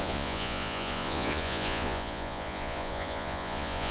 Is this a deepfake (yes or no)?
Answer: yes